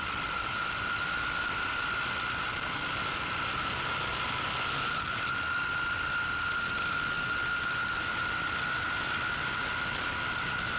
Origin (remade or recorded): recorded